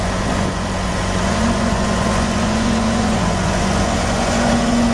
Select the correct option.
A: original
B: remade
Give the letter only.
B